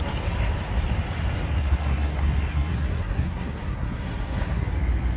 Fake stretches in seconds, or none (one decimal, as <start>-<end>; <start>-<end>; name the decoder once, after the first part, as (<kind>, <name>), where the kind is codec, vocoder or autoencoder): 1.6-4.7 (codec, SNAC)